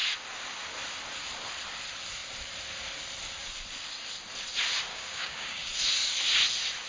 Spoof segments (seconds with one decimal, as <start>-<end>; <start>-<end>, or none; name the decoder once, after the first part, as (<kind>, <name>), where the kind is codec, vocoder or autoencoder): 4.9-5.7 (codec, DAC)